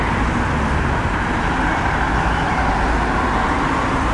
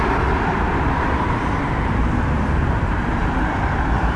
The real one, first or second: first